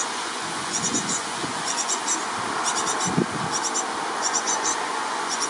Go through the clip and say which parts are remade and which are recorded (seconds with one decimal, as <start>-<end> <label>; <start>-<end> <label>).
0.0-2.0 remade; 2.0-4.2 recorded; 4.2-5.5 remade